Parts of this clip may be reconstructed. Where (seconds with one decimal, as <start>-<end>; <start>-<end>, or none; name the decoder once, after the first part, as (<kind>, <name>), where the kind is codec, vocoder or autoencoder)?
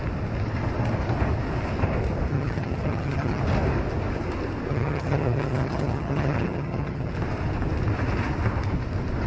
2.3-3.4 (vocoder, HiFi-GAN); 4.7-7.1